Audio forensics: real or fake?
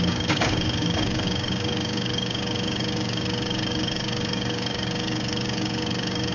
fake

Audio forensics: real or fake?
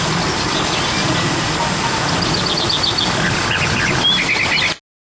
real